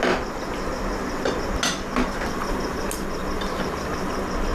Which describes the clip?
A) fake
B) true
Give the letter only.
B